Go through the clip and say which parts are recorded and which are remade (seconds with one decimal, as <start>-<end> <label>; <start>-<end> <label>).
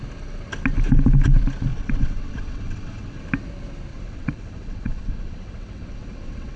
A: 0.0-1.7 recorded; 1.7-3.2 remade; 3.2-3.9 recorded; 3.9-6.6 remade